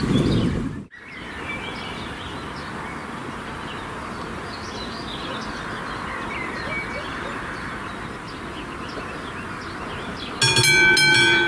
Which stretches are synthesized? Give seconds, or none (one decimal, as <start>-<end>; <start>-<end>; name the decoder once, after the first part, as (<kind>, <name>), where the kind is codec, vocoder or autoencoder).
none